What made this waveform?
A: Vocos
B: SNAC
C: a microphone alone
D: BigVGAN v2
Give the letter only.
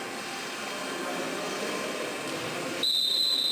C